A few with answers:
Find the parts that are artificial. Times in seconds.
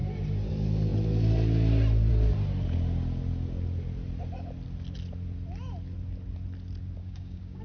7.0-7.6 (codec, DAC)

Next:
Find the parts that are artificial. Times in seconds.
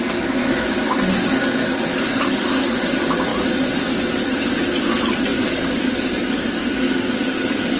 0.4-2.8 (codec, DAC); 5.3-7.8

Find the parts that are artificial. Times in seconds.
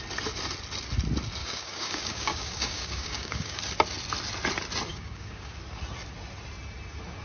1.4-3.6 (codec, DAC); 4.9-5.6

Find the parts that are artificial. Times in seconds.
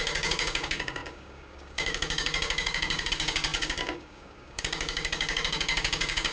0.0-6.3 (codec, DAC)